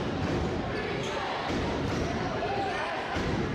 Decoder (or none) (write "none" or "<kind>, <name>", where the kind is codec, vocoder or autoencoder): vocoder, BigVGAN v2